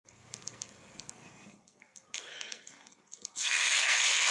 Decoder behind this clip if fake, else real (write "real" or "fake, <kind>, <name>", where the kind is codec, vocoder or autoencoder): fake, codec, SNAC